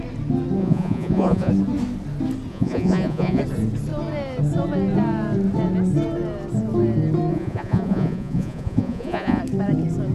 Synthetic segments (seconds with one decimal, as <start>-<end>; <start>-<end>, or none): 0.6-1.5; 2.5-3.4; 7.3-9.4